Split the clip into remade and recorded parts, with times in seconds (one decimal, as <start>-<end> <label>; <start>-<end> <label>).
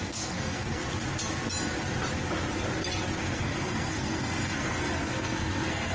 0.0-0.8 remade; 0.8-3.2 recorded; 3.2-5.9 remade